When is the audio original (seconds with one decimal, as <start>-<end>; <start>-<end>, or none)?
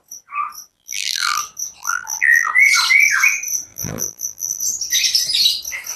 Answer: 0.0-0.7; 1.4-1.8; 2.5-3.7; 4.6-6.0